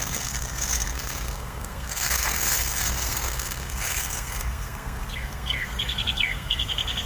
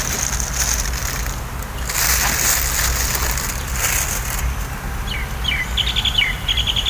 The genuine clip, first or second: second